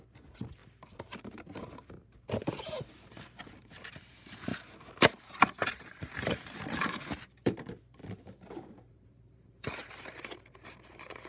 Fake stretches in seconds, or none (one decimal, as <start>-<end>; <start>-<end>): 0.0-0.6; 1.2-4.5; 5.0-11.3